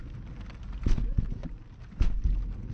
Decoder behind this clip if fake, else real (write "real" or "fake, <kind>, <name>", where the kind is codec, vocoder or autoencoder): real